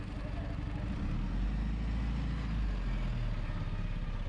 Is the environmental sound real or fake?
real